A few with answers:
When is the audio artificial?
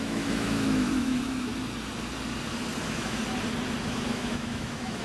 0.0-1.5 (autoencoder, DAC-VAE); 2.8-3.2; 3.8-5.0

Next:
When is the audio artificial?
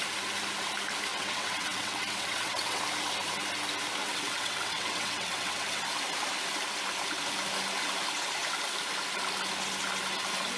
1.1-2.8 (vocoder, WaveNeXt); 4.0-5.8